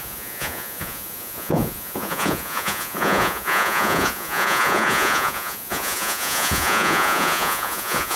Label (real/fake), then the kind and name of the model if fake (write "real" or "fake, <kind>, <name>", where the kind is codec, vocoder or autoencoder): fake, vocoder, Vocos